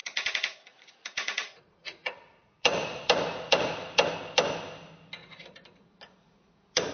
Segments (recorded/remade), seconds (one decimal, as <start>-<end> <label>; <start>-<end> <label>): 0.0-4.1 remade; 4.1-5.2 recorded; 5.2-6.9 remade